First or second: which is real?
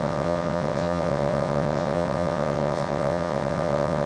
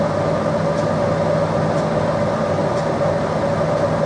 second